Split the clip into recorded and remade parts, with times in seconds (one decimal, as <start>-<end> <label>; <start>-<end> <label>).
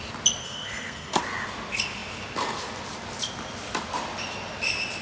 0.0-0.4 recorded; 0.4-1.2 remade; 1.2-5.0 recorded